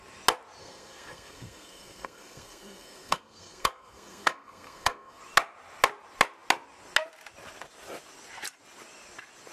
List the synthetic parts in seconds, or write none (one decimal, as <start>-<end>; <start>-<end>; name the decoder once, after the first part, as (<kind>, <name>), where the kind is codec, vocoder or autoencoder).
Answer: 0.6-5.2 (codec, SNAC)